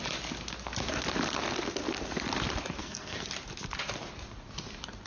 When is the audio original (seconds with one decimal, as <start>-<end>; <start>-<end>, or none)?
0.0-2.8; 3.3-5.1

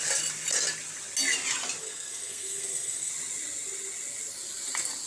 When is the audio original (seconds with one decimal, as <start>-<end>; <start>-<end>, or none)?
0.0-1.8; 3.1-5.1

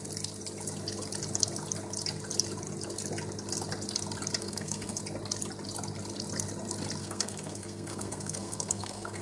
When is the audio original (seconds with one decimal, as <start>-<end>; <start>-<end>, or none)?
0.0-4.4; 5.0-7.0